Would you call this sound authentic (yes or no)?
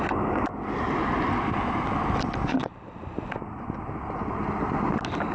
yes